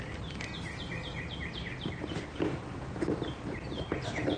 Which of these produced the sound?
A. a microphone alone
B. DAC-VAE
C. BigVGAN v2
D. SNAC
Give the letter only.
A